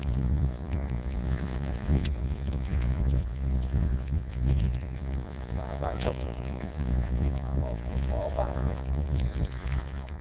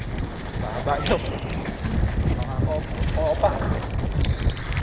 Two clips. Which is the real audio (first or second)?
second